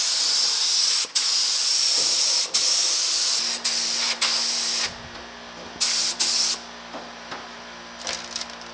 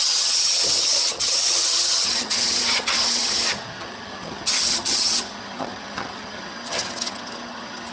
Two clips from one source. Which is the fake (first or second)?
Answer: second